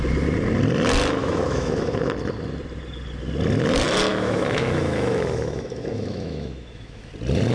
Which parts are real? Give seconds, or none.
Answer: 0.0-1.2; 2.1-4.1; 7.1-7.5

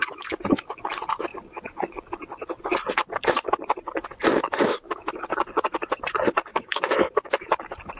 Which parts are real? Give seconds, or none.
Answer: 0.9-4.3; 5.2-6.5; 7.5-8.0